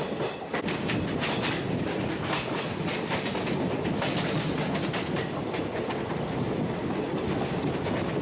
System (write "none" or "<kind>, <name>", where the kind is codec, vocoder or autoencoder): none